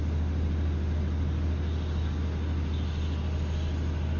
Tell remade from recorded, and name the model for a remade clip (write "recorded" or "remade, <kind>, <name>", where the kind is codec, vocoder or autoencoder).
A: recorded